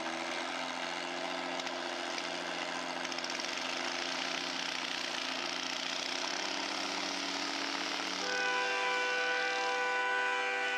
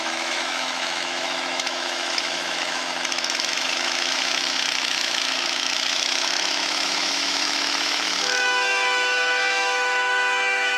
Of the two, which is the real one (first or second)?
first